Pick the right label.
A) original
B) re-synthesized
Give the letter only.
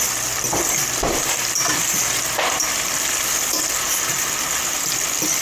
A